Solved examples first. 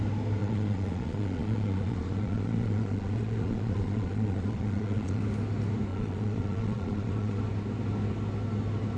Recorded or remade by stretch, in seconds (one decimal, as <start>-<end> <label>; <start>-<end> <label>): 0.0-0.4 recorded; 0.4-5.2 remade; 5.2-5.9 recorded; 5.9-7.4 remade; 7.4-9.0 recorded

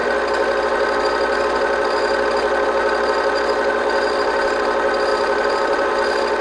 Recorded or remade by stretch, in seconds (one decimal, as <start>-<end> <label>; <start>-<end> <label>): 0.0-5.1 recorded; 5.1-5.9 remade; 5.9-6.4 recorded

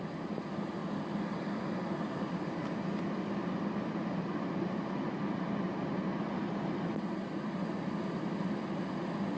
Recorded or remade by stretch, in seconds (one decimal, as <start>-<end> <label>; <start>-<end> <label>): 0.0-9.4 recorded

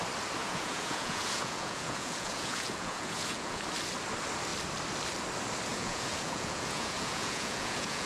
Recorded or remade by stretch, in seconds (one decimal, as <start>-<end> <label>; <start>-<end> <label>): 0.0-0.4 recorded; 0.4-3.6 remade; 3.6-5.7 recorded; 5.7-8.1 remade

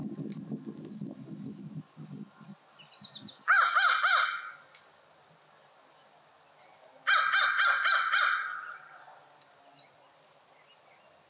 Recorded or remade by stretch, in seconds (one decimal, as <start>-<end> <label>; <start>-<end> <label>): 0.0-11.3 recorded